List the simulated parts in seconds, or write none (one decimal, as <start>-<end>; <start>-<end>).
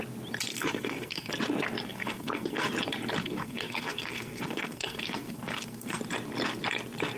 0.5-1.3; 1.9-2.7; 3.2-6.0